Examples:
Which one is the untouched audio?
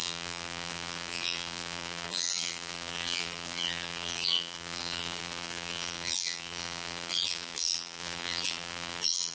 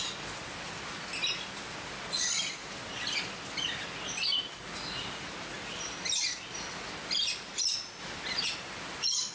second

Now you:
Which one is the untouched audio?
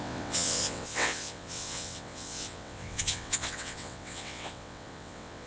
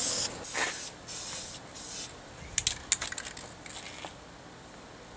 second